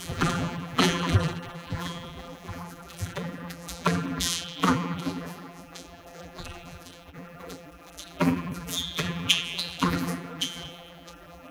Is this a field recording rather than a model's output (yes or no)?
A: no